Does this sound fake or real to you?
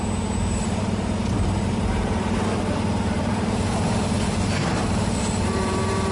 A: fake